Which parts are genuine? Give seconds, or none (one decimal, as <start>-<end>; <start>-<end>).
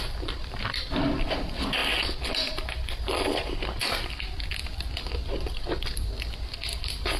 1.8-5.0